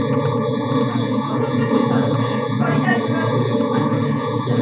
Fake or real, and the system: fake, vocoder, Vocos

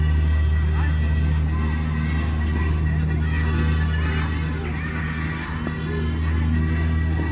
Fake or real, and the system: real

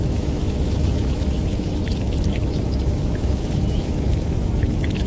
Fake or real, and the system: fake, autoencoder, DAC-VAE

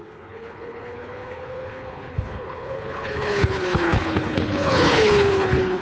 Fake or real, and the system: fake, codec, HILCodec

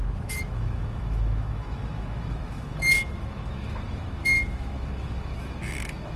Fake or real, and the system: fake, autoencoder, DAC-VAE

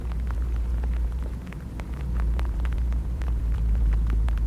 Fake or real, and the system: fake, vocoder, BigVGAN v2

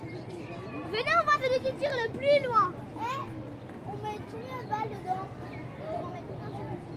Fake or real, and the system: real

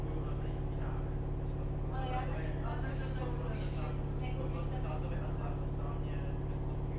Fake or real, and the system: real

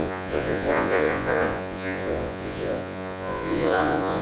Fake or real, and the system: fake, vocoder, Vocos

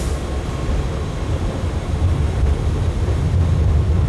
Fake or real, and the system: real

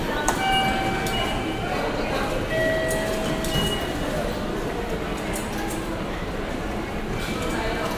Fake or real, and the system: real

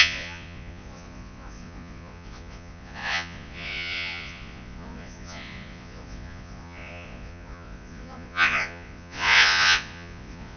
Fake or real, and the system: fake, vocoder, Vocos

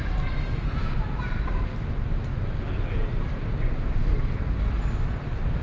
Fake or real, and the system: real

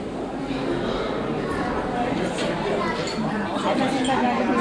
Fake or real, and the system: real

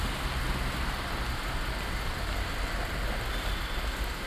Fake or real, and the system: real